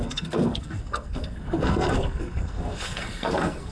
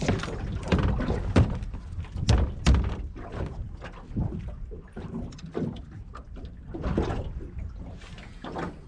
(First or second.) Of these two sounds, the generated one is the first